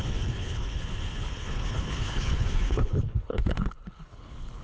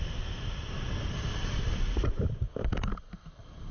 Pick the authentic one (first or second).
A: second